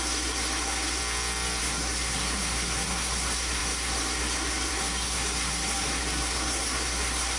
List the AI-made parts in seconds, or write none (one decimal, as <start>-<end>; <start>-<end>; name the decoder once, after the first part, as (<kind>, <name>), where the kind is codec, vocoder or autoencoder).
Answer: 0.0-1.0 (codec, SNAC); 1.6-7.4